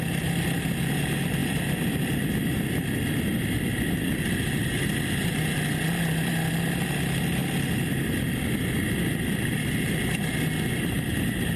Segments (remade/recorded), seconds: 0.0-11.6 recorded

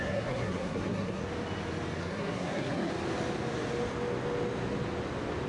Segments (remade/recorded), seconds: 0.0-1.2 remade; 1.2-2.0 recorded; 2.0-2.9 remade; 2.9-5.5 recorded

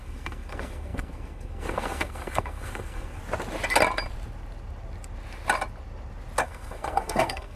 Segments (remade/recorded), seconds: 0.0-3.2 remade; 3.2-6.4 recorded; 6.4-7.6 remade

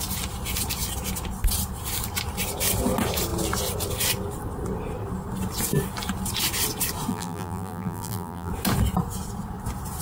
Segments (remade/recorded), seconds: 0.0-7.1 recorded; 7.1-8.5 remade; 8.5-10.0 recorded

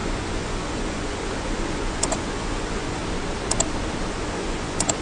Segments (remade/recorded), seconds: 0.0-3.0 remade; 3.0-4.1 recorded; 4.1-5.0 remade

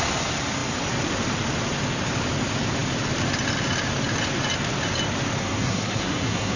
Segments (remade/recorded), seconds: 0.0-5.4 recorded; 5.4-6.6 remade

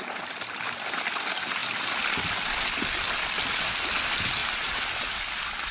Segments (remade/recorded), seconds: 0.0-5.7 recorded

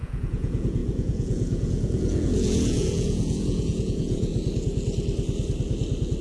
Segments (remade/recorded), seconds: 0.0-4.3 remade; 4.3-6.2 recorded